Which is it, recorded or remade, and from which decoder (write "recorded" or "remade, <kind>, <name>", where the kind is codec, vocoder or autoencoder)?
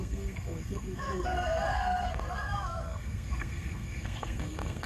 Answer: remade, codec, SNAC